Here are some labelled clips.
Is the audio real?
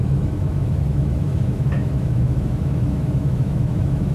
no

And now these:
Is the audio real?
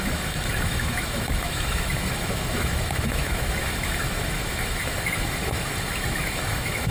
no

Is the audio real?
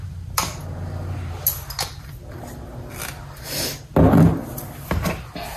yes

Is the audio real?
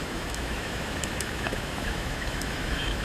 no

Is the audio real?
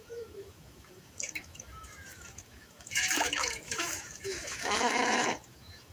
no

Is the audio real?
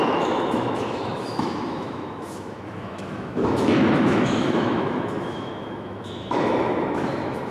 no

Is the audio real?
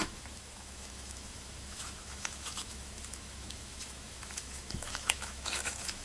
no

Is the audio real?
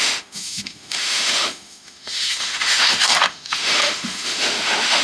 no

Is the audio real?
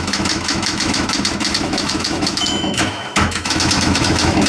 no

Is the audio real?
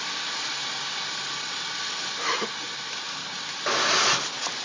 yes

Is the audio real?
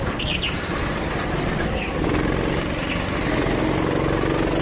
yes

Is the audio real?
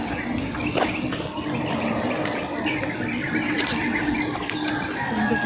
yes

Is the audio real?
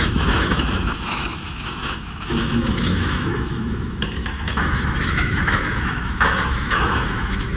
no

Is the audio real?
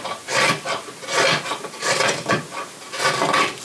yes